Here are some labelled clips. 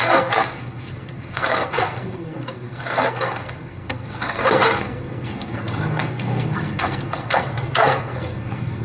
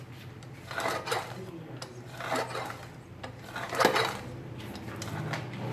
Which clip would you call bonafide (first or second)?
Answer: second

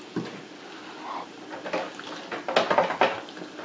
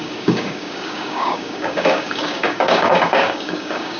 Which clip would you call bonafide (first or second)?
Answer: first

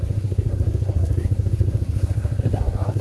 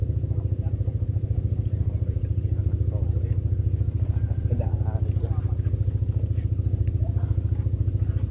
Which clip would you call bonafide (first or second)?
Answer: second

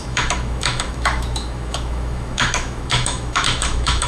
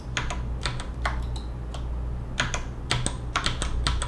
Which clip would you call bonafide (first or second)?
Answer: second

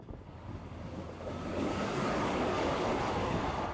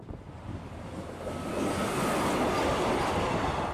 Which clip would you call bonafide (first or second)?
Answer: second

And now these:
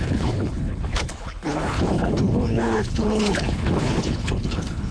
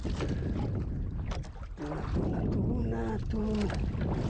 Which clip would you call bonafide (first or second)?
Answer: second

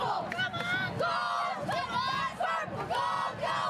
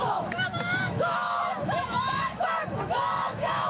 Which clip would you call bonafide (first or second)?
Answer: first